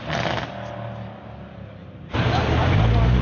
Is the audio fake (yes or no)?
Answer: no